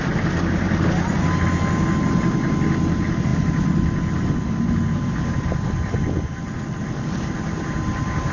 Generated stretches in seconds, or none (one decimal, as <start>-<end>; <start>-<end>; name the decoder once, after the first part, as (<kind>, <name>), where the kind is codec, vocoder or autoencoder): 3.3-8.3 (vocoder, BigVGAN v2)